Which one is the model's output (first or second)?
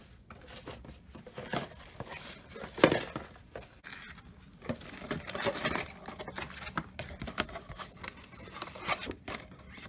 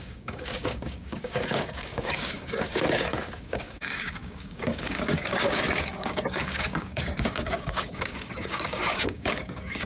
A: second